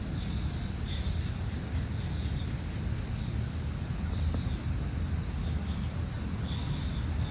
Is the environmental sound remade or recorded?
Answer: recorded